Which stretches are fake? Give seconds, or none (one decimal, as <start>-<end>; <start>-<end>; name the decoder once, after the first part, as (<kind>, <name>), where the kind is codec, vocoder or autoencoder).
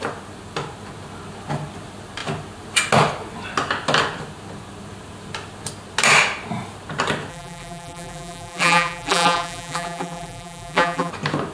7.3-11.1 (vocoder, BigVGAN v2)